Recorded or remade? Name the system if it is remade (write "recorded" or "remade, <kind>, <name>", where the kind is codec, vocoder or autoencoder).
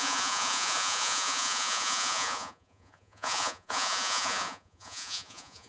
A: remade, vocoder, Vocos